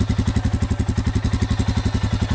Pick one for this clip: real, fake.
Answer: real